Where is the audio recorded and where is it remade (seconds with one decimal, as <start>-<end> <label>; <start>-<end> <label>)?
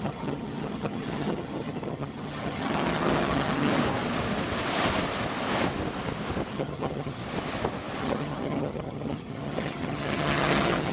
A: 0.0-3.7 remade; 3.7-6.5 recorded; 6.5-7.2 remade; 7.2-8.0 recorded; 8.0-10.9 remade